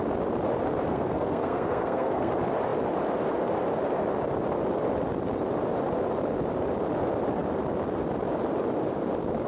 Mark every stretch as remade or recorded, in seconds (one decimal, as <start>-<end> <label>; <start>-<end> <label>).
0.0-0.9 recorded; 0.9-2.3 remade; 2.3-9.5 recorded